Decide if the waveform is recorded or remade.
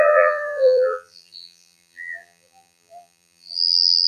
remade